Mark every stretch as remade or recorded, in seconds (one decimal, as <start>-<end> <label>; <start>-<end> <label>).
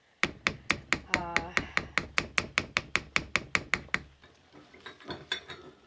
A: 0.0-5.9 recorded